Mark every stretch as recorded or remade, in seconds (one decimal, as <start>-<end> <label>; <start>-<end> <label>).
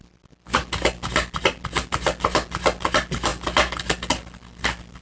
0.0-5.0 recorded